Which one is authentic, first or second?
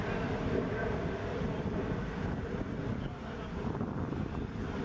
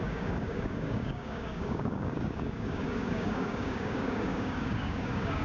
first